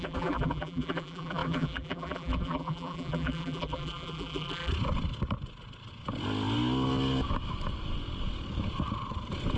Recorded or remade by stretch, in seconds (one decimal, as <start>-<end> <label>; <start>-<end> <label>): 0.0-4.7 remade; 4.7-9.6 recorded